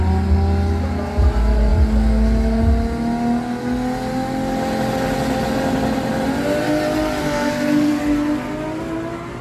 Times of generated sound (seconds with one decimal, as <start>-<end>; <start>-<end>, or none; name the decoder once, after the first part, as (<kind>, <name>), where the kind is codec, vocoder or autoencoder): 7.2-7.9 (codec, SNAC)